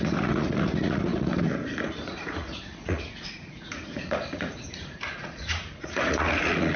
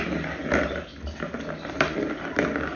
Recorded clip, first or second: second